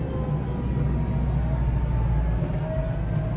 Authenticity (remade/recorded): recorded